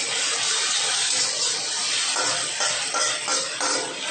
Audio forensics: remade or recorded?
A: recorded